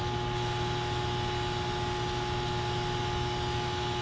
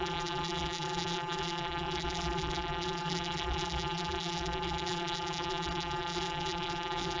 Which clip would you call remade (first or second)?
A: second